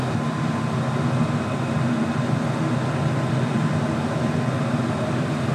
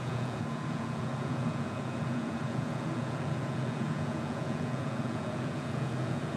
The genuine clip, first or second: first